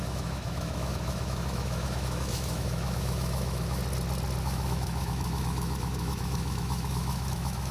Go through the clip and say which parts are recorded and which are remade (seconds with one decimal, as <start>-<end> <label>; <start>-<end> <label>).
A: 0.0-3.8 remade; 3.8-4.4 recorded; 4.4-7.7 remade